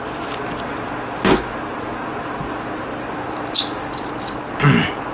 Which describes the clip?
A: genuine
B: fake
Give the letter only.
A